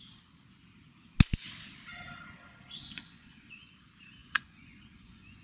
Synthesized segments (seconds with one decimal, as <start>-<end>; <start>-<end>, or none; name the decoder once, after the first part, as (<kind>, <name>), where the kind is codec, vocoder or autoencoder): 2.8-3.7 (vocoder, Vocos); 4.2-5.4